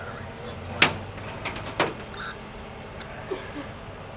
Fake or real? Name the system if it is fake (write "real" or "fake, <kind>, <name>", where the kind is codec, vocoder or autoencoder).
real